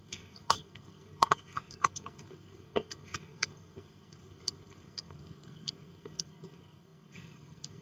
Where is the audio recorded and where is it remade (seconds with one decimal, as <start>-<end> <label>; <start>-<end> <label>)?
0.0-7.8 remade